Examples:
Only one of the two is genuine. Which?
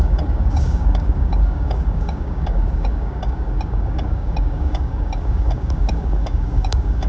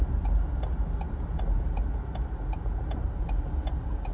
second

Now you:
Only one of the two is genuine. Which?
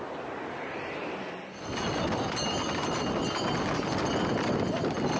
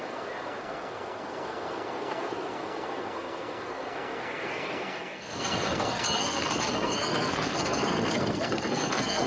first